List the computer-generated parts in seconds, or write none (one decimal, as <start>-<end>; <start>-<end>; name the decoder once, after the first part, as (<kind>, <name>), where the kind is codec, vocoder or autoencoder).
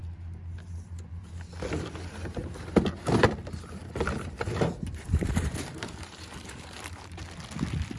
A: 3.8-7.2 (vocoder, BigVGAN v2)